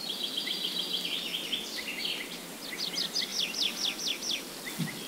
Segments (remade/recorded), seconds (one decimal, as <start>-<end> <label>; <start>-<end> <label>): 0.0-5.1 recorded